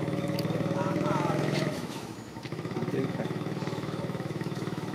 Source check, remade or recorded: remade